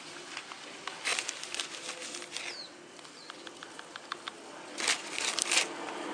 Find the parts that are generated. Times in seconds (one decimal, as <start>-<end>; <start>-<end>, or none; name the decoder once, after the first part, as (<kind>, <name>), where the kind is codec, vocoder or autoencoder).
none